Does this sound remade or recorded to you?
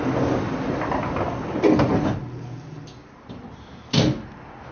recorded